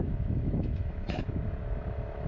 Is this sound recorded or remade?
remade